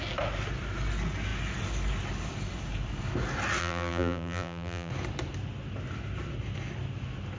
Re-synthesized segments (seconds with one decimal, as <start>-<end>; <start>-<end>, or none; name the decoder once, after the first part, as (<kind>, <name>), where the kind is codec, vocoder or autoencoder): 3.6-4.9 (vocoder, BigVGAN v2)